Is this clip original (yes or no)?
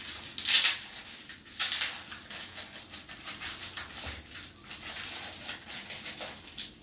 yes